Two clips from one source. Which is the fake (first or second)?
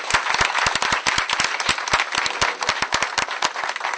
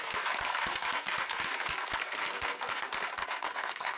second